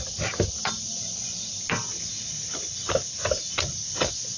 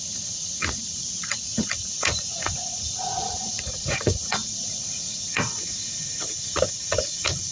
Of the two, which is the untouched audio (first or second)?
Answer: first